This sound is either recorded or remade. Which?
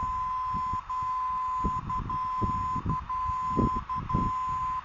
recorded